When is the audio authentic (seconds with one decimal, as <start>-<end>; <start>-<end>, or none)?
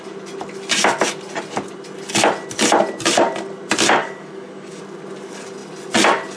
0.0-4.0; 4.8-6.4